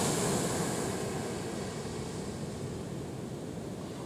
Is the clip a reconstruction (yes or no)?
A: no